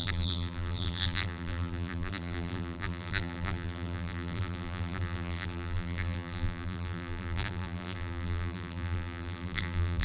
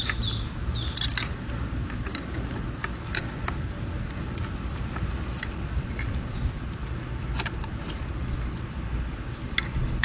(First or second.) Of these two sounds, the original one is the second